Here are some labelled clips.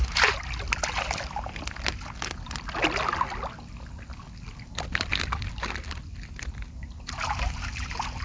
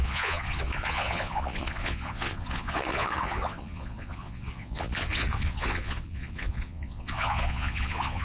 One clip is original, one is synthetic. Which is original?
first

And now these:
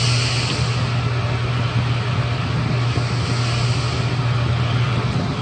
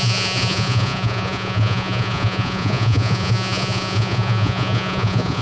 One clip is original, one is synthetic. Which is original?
first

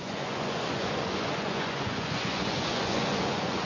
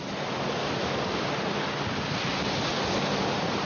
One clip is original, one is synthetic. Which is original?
second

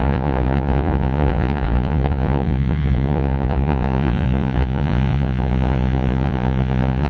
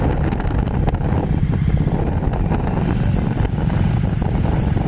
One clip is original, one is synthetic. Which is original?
second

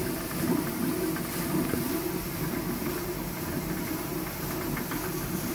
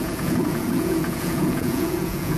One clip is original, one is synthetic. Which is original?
first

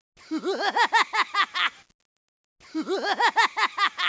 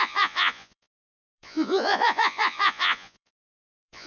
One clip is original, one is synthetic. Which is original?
first